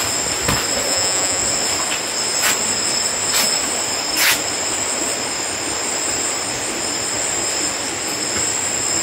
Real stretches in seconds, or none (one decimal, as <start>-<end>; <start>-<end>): 0.0-0.9; 1.4-9.0